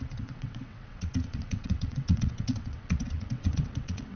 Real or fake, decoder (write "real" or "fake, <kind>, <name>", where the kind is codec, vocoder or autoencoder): fake, vocoder, WaveNeXt